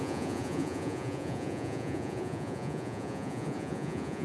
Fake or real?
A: fake